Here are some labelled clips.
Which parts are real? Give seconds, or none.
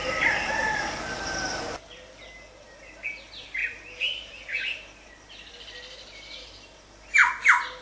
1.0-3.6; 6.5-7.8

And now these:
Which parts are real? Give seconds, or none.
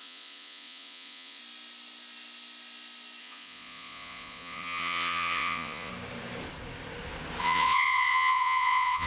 1.4-3.2; 5.9-7.4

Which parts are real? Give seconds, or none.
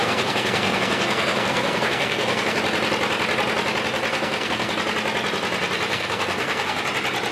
2.6-4.1; 4.7-5.9; 6.8-7.3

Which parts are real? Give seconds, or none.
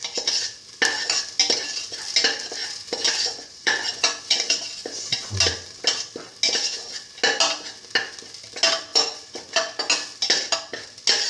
0.0-2.6; 5.3-8.9; 9.8-11.3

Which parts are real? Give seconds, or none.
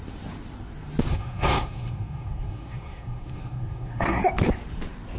0.0-1.1; 4.2-5.2